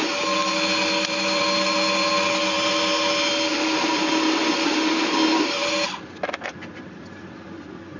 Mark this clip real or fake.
real